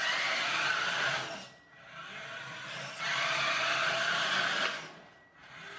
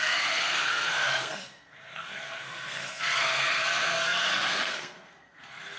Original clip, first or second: first